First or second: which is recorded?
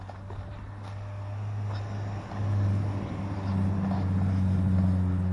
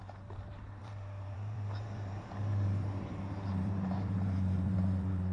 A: first